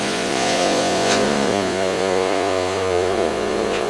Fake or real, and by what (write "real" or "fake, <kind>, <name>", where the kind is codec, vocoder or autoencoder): fake, vocoder, Vocos